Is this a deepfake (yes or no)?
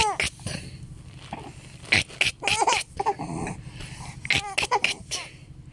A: no